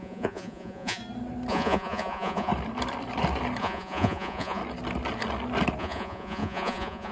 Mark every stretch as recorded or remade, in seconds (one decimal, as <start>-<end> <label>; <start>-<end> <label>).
0.0-1.0 remade; 1.0-1.5 recorded; 1.5-2.5 remade; 2.5-3.6 recorded; 3.6-4.6 remade; 4.6-5.8 recorded; 5.8-7.1 remade